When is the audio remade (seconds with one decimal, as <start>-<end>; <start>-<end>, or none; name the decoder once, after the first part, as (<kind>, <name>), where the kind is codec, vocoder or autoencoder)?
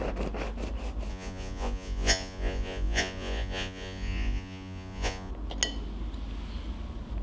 1.1-5.3 (vocoder, Vocos)